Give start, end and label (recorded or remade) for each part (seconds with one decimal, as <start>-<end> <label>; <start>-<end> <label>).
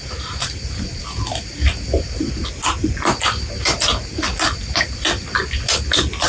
0.0-6.3 recorded